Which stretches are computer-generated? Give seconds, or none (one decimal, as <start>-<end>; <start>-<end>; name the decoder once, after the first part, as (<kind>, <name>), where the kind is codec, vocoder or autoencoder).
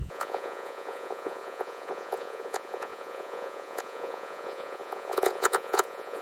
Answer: 0.0-6.2 (vocoder, Vocos)